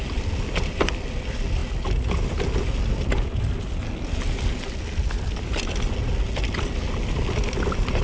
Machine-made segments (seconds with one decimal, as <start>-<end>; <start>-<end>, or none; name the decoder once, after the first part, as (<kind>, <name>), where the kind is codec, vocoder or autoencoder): none